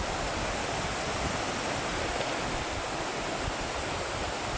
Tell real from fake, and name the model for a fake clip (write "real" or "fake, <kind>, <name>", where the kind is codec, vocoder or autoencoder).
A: real